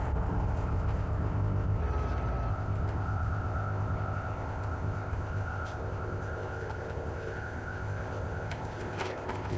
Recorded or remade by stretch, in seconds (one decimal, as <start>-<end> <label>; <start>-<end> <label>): 0.0-1.8 remade; 1.8-2.5 recorded; 2.5-9.6 remade